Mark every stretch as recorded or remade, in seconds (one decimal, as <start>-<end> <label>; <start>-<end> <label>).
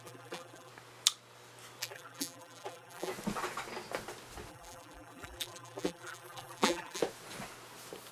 0.0-0.7 remade; 0.7-1.8 recorded; 1.8-3.1 remade; 3.1-4.5 recorded; 4.5-7.0 remade; 7.0-8.1 recorded